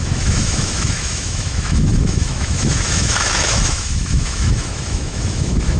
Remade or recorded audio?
remade